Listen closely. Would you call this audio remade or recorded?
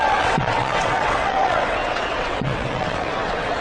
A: remade